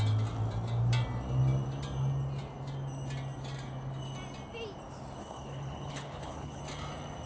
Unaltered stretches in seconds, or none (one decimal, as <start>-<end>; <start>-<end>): 0.0-5.2; 6.6-7.3